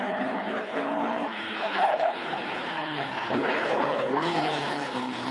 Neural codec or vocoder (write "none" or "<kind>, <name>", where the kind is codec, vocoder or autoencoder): codec, HILCodec